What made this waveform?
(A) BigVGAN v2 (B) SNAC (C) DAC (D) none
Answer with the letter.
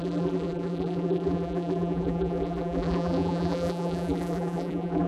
A